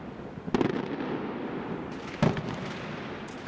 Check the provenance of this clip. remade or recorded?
recorded